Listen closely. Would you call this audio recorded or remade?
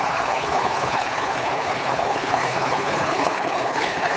remade